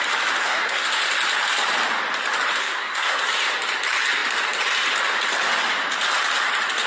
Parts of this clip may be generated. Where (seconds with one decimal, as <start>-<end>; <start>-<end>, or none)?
0.4-0.9; 2.6-3.2